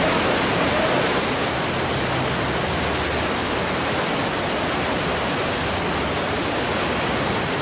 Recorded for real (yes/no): yes